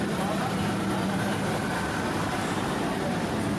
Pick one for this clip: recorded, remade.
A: recorded